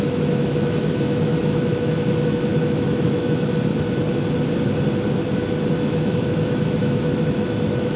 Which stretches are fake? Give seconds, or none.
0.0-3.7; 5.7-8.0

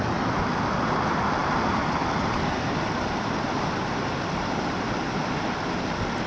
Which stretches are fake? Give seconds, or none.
none

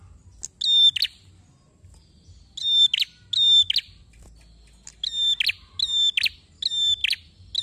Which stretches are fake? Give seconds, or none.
none